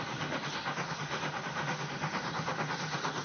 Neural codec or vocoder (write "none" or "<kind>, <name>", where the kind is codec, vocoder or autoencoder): none